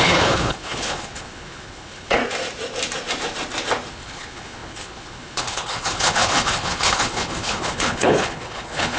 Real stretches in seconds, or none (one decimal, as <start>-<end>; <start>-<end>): 2.2-3.9